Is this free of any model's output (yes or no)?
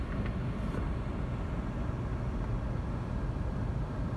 yes